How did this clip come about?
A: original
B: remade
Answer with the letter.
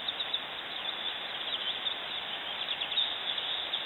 A